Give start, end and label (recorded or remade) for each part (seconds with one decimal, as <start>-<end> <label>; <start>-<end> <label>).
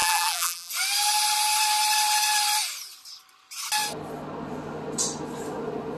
0.0-0.7 remade; 0.7-6.0 recorded